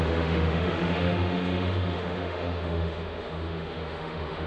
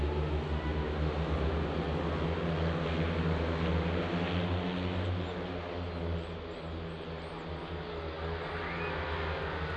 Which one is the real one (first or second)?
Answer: second